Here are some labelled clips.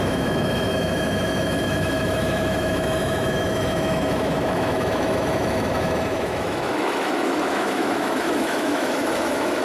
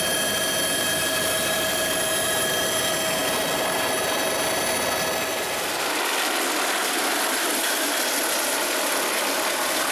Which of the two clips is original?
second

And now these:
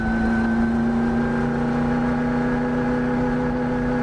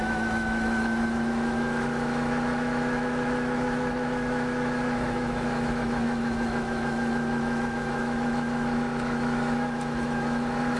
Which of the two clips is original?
first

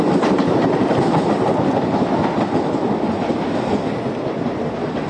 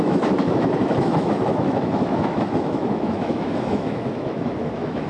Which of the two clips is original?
first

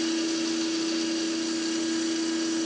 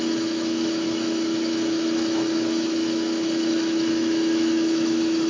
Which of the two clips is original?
first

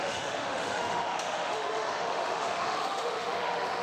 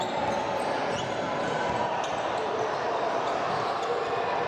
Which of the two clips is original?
second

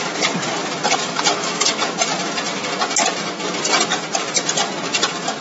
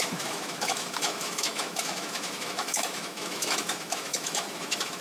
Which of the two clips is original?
first